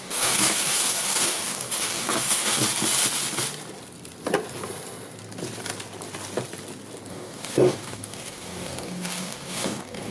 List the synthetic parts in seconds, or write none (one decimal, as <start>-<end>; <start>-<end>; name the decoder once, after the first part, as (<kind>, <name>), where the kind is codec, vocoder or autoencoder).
0.0-2.6 (codec, DAC); 7.1-10.1